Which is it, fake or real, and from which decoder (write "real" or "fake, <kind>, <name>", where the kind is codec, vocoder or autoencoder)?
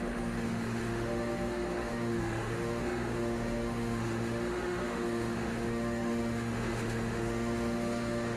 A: fake, autoencoder, DAC-VAE